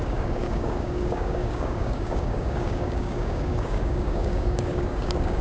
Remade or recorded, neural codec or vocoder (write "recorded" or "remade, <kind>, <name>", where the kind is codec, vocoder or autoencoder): remade, codec, DAC